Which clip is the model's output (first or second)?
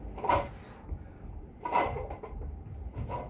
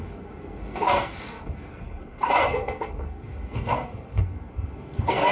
second